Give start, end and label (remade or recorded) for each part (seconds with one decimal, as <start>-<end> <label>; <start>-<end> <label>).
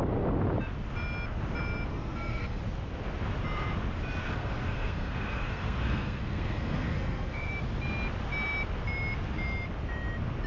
0.0-1.9 recorded; 1.9-2.6 remade; 2.6-4.2 recorded; 4.2-7.5 remade; 7.5-10.5 recorded